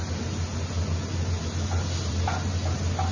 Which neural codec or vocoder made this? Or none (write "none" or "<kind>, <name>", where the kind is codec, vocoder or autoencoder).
none